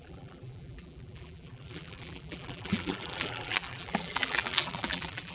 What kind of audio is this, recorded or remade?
remade